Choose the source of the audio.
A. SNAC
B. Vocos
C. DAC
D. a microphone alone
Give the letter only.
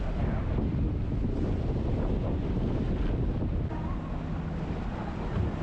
D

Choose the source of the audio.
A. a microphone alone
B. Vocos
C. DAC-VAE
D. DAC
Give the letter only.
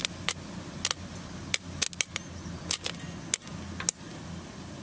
A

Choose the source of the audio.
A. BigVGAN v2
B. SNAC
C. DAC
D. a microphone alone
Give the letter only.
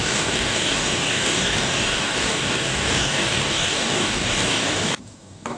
C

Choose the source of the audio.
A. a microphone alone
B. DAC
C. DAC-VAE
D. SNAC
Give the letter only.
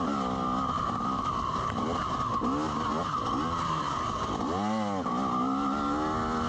A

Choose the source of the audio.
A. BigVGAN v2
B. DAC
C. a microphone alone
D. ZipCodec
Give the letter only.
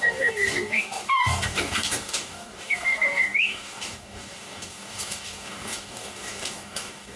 B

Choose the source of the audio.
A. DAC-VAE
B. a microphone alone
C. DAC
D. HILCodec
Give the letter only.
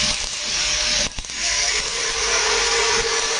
C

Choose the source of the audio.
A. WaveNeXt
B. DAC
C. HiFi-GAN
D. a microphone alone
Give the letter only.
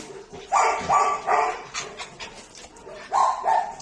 D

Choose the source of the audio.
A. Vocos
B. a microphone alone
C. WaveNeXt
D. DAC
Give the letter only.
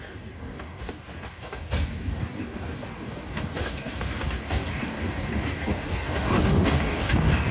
D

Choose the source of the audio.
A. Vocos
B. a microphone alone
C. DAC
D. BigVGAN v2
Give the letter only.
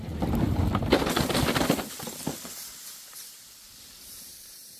B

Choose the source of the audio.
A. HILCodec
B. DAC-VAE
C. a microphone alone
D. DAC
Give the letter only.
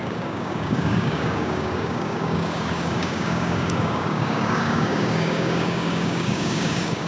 D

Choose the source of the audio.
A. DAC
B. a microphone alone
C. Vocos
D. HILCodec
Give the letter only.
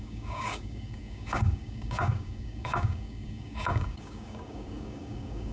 A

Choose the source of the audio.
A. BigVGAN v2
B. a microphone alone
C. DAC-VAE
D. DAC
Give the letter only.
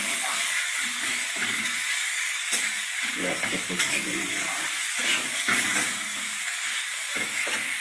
D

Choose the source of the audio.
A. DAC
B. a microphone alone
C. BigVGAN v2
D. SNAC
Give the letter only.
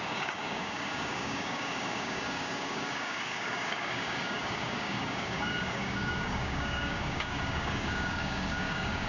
A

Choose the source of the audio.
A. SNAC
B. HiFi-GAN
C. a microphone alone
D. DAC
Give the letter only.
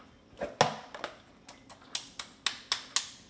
C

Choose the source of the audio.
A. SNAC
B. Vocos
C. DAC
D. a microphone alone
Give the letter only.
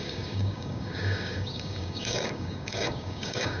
C